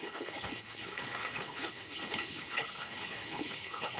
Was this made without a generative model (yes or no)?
no